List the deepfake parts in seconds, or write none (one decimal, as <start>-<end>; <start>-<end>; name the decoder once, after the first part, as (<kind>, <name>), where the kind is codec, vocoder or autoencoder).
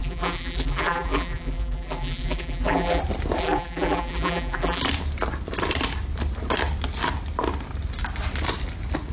0.0-3.0 (vocoder, BigVGAN v2); 3.4-4.8